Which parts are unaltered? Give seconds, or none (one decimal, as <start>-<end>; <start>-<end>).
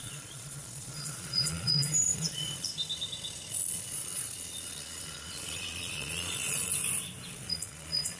2.7-3.5; 6.7-7.3